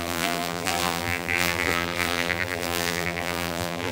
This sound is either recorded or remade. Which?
remade